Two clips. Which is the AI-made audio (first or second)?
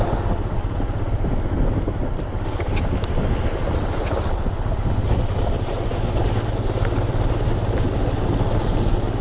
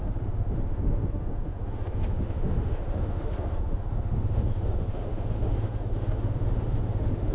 second